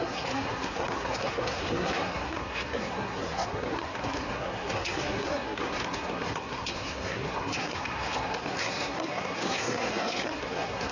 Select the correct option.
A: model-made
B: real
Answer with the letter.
A